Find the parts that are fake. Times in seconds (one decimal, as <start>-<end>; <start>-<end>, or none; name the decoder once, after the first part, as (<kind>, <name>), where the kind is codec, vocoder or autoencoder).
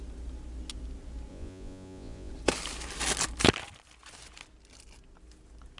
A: 1.3-2.3 (vocoder, Vocos)